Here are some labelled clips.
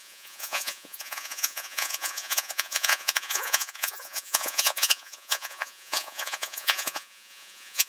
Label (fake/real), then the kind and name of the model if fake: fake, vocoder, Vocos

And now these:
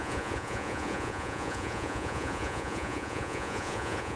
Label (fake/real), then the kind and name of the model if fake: fake, vocoder, Vocos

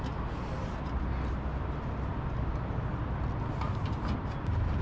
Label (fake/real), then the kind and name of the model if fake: real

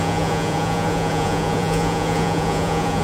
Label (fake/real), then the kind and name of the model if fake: fake, vocoder, Vocos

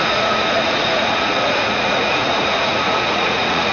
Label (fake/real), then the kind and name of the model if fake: fake, vocoder, Vocos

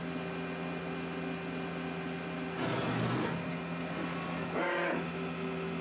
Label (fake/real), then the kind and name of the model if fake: real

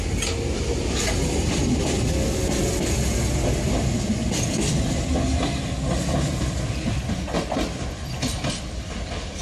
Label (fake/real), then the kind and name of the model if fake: real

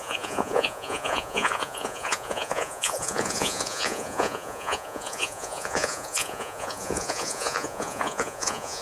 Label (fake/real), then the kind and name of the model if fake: fake, vocoder, Vocos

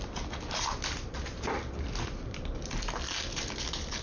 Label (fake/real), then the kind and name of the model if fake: real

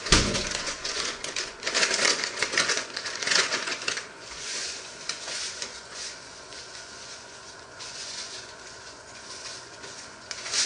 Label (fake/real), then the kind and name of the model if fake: fake, vocoder, Vocos